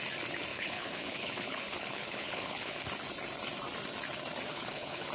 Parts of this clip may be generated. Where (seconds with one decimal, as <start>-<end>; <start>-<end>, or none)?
0.5-2.8; 4.5-5.1